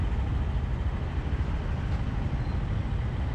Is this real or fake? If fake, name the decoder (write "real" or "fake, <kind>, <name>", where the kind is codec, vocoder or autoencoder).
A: real